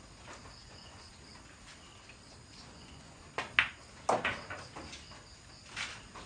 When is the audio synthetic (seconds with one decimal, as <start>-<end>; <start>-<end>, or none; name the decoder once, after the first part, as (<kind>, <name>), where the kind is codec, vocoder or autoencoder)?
0.6-1.1 (vocoder, Vocos); 2.5-3.2